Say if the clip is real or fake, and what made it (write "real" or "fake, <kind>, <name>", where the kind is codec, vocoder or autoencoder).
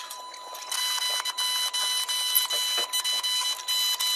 real